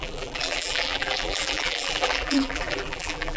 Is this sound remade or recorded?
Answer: remade